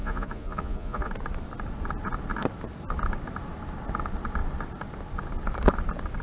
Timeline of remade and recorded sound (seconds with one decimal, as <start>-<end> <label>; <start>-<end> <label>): 0.0-1.1 remade; 1.1-6.2 recorded